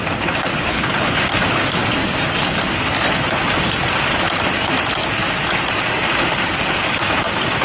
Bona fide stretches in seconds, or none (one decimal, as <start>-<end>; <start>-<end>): 0.0-0.5; 1.2-7.6